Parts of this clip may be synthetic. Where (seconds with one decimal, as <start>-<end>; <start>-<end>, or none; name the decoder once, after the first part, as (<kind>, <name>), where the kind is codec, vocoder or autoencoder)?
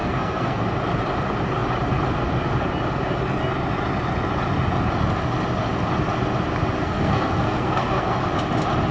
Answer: 0.0-0.6 (codec, SNAC); 6.8-8.2